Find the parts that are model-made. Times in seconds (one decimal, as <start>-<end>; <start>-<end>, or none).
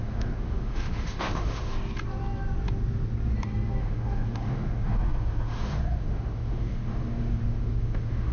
0.0-1.7; 3.8-8.3